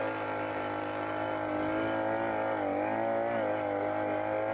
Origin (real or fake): real